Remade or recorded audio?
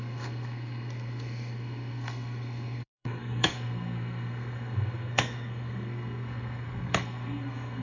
remade